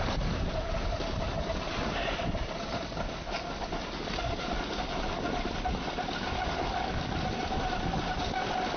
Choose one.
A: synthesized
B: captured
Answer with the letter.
B